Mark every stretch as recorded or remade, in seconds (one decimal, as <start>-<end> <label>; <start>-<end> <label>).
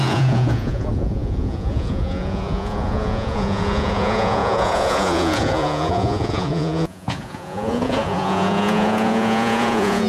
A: 0.0-10.1 remade